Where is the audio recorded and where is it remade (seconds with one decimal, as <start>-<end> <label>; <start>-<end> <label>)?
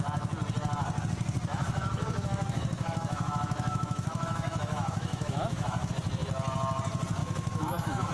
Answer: 0.0-1.5 recorded; 1.5-5.9 remade; 5.9-7.2 recorded; 7.2-8.1 remade